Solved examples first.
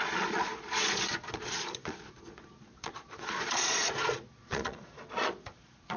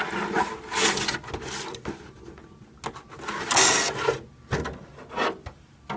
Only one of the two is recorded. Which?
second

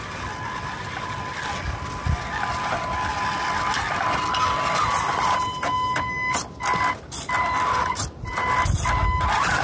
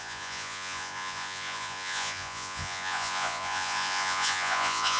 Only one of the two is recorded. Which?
first